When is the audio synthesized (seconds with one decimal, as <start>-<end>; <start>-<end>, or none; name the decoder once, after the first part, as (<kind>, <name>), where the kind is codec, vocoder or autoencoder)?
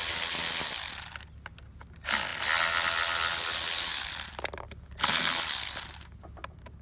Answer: none